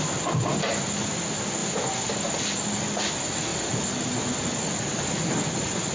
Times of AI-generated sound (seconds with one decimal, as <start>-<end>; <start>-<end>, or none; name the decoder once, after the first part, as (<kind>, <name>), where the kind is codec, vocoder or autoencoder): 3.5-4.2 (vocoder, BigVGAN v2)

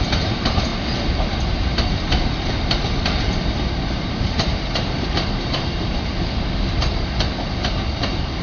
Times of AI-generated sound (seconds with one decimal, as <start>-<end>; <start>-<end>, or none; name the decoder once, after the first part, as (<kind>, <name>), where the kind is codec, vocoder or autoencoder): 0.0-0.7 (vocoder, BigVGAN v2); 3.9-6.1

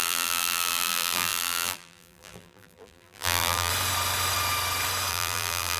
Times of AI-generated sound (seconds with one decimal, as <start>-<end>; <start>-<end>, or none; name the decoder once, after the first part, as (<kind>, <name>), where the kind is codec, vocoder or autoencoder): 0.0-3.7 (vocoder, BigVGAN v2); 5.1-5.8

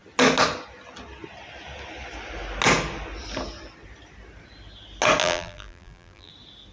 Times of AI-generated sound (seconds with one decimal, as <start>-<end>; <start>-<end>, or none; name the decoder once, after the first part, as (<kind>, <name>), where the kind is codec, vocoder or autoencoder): 5.2-6.3 (vocoder, BigVGAN v2)

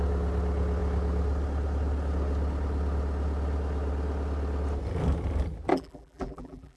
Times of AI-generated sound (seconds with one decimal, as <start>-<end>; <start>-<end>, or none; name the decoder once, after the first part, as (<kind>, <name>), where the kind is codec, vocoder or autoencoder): 5.7-6.8 (vocoder, BigVGAN v2)

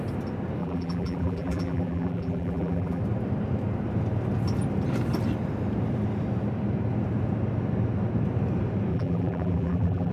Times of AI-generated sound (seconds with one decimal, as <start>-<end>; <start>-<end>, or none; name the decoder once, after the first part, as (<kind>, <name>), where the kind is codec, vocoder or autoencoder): 0.6-3.0 (vocoder, BigVGAN v2); 8.9-10.1

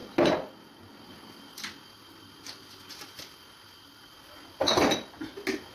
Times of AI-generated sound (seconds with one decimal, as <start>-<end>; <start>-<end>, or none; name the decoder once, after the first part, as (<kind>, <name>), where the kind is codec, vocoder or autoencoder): none